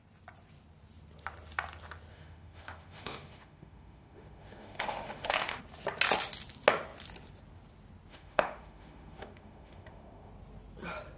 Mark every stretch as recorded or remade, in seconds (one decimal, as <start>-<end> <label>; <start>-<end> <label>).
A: 0.0-2.1 recorded; 2.1-5.6 remade; 5.6-8.1 recorded; 8.1-10.3 remade; 10.3-11.2 recorded